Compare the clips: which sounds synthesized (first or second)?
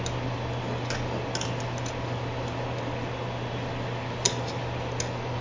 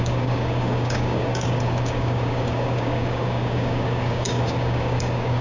second